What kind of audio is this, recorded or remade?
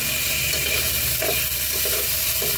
recorded